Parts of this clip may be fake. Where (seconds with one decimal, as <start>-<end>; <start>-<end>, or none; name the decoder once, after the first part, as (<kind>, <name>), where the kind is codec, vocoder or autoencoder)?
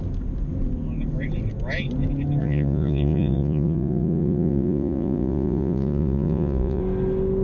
2.4-6.8 (vocoder, Vocos)